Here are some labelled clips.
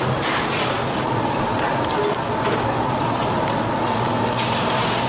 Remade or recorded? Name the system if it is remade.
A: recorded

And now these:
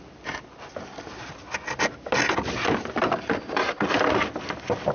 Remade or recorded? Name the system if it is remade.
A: recorded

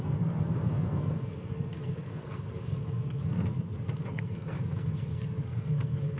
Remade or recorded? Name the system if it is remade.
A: remade, codec, SNAC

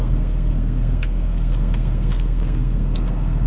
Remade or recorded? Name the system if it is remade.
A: remade, codec, SNAC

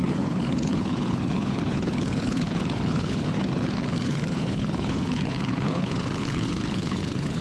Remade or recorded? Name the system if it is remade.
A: remade, codec, HILCodec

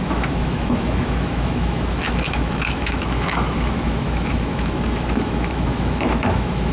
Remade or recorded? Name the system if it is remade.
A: remade, autoencoder, DAC-VAE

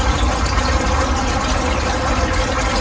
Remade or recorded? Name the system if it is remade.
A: recorded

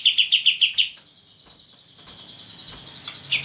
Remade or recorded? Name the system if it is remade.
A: recorded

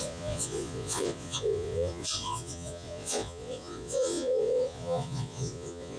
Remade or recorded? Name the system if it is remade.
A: remade, vocoder, Vocos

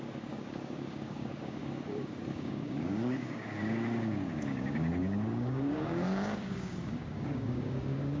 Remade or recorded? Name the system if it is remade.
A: remade, codec, DAC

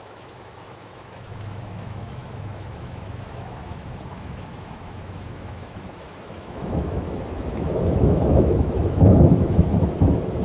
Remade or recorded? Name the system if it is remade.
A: remade, autoencoder, DAC-VAE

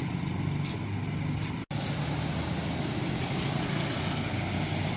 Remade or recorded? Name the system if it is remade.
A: recorded